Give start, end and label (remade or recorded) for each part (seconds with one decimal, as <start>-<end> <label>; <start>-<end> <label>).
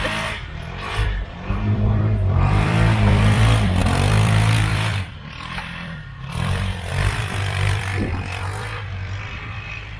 0.0-10.0 remade